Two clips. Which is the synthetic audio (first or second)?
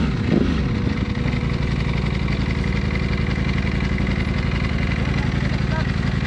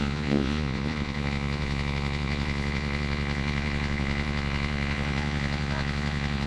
second